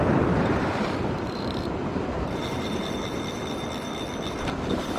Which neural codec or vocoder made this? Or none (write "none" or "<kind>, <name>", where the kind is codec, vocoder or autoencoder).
vocoder, BigVGAN v2